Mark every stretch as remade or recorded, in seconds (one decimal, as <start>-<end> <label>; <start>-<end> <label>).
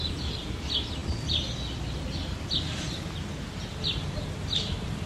0.0-5.1 recorded